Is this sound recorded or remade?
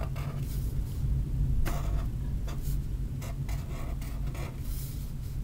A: recorded